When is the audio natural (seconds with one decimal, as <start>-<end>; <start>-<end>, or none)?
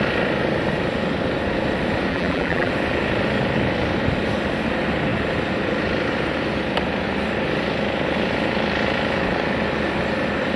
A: 0.0-2.1; 2.7-10.6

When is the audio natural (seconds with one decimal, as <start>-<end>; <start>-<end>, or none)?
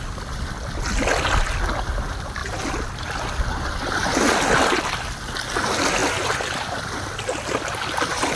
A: 0.0-6.0; 7.6-8.4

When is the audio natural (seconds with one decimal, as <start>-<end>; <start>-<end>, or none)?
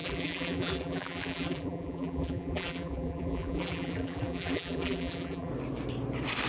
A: 5.5-6.5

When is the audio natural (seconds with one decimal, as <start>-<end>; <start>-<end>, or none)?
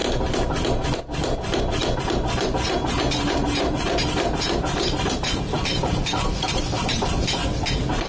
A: 0.0-2.5; 7.0-8.1